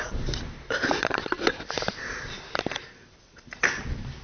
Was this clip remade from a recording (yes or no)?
no